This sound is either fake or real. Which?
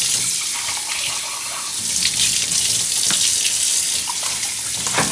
real